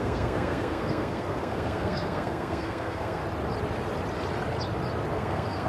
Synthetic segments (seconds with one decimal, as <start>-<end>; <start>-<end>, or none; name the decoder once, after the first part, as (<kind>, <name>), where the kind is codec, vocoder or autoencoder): 0.0-3.2 (codec, SNAC); 5.1-5.7